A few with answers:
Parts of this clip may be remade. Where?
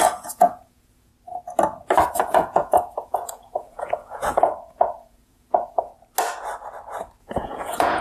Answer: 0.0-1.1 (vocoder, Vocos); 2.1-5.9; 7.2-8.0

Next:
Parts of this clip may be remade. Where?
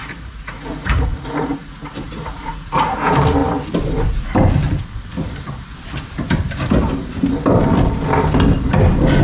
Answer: 0.0-3.0 (vocoder, Vocos)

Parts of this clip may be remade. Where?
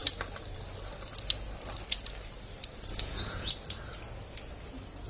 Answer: 2.9-3.5 (vocoder, Vocos)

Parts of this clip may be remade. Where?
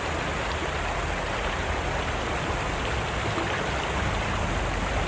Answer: none